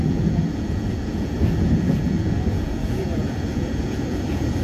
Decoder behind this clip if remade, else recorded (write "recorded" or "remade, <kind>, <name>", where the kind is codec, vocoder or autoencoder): remade, vocoder, Vocos